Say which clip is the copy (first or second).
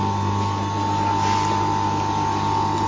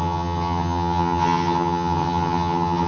second